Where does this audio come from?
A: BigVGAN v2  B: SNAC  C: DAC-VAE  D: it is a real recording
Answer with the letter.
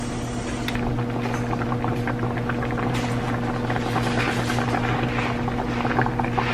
D